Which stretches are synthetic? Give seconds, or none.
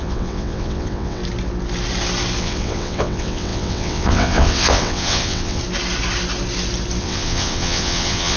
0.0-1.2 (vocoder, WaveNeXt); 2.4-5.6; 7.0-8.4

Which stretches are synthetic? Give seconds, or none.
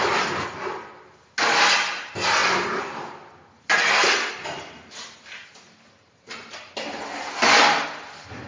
none